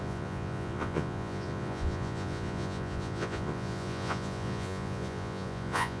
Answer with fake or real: fake